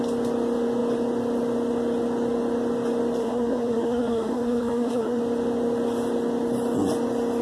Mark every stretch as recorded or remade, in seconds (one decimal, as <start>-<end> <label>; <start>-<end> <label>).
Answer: 0.0-3.2 recorded; 3.2-5.2 remade; 5.2-7.4 recorded

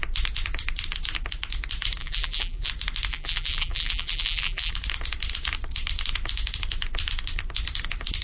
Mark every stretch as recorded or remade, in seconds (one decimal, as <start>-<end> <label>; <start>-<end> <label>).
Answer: 0.0-2.0 recorded; 2.0-2.7 remade; 2.7-3.1 recorded; 3.1-4.7 remade; 4.7-8.2 recorded

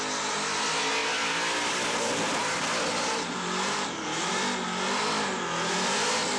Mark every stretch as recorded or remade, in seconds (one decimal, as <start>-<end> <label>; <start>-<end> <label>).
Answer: 0.0-1.0 recorded; 1.0-4.3 remade; 4.3-6.4 recorded

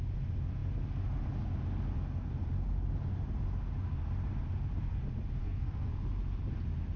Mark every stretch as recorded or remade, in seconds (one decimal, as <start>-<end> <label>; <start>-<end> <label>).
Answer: 0.0-5.4 recorded; 5.4-5.9 remade; 5.9-7.0 recorded